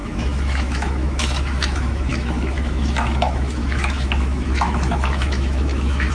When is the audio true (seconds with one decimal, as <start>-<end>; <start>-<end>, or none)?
none

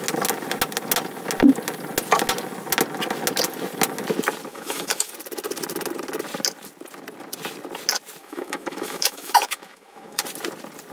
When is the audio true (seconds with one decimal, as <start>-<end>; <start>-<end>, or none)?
0.0-4.5; 5.1-8.2; 10.2-10.9

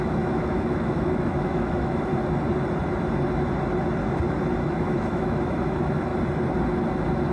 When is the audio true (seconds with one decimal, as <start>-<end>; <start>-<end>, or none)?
2.1-4.6; 6.1-7.3

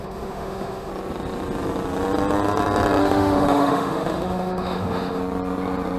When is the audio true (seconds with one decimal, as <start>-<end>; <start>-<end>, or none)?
0.9-3.0; 5.2-6.0

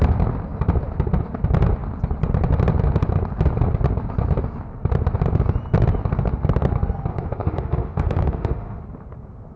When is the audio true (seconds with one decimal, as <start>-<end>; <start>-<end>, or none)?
0.0-7.1; 8.8-9.6